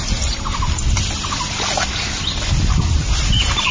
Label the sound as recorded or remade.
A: recorded